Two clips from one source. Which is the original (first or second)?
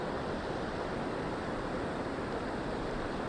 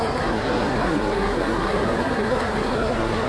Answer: first